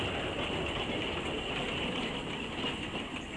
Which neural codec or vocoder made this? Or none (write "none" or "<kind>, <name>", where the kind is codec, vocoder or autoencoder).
none